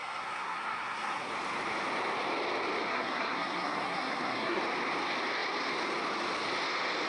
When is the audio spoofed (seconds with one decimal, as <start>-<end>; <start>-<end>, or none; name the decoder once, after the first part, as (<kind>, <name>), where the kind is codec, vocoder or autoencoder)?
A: 0.0-1.3 (codec, SNAC); 2.9-4.6